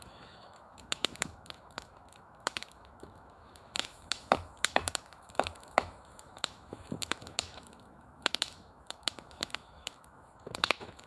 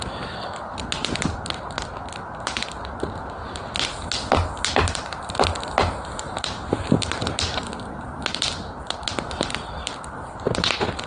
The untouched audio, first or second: second